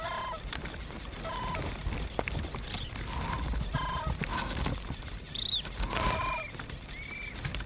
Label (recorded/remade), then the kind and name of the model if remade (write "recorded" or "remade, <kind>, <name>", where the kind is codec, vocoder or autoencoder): recorded